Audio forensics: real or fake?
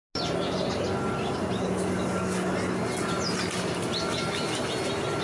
real